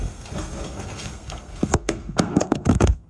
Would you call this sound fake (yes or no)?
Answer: yes